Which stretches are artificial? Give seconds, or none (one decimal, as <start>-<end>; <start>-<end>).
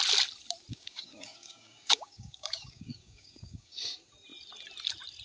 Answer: 0.7-3.8